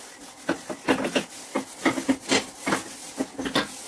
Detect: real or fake real